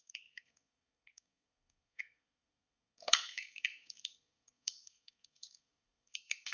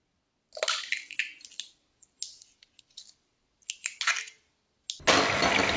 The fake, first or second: first